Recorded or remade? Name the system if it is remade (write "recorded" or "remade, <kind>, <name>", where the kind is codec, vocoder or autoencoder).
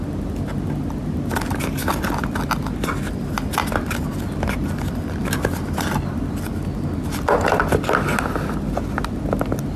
recorded